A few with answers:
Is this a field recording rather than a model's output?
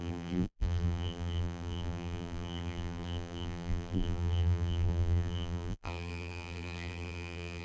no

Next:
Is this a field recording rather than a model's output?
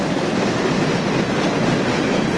yes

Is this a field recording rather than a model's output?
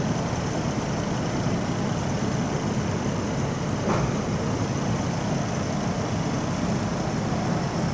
yes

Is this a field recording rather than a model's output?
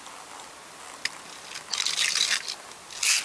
yes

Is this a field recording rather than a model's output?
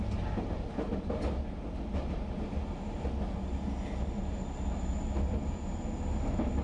yes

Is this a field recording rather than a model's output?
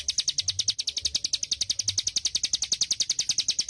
yes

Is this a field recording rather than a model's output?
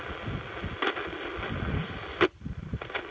yes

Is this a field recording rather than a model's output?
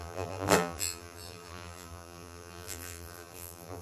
no